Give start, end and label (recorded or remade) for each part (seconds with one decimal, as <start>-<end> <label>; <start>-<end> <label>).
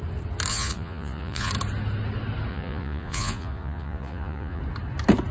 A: 0.0-0.5 recorded; 0.5-1.5 remade; 1.5-2.5 recorded; 2.5-4.6 remade; 4.6-5.3 recorded